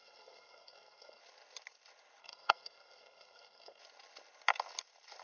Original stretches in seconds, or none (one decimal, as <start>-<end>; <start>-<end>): 1.2-2.2; 3.8-5.2